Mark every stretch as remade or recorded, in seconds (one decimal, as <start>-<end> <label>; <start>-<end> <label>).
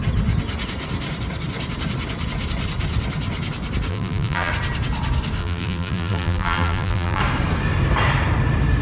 0.0-3.9 recorded; 3.9-4.5 remade; 4.5-5.4 recorded; 5.4-7.2 remade; 7.2-8.8 recorded